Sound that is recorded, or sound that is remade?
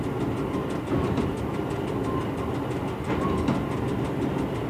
recorded